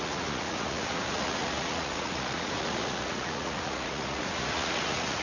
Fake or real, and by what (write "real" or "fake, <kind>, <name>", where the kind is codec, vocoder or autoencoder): fake, vocoder, Vocos